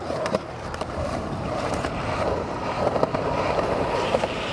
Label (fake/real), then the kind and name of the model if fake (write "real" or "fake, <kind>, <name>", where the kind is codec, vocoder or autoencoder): fake, vocoder, BigVGAN v2